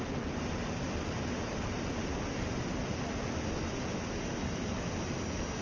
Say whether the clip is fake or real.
real